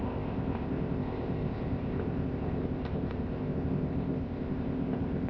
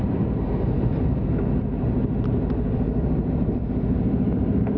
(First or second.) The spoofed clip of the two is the first